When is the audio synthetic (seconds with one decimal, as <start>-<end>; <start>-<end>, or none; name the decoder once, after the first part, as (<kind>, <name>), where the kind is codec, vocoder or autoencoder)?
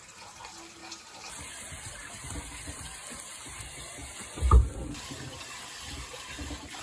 none